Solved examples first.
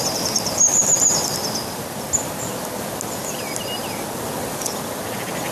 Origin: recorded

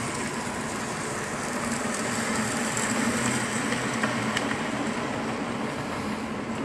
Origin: recorded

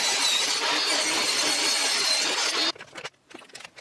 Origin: recorded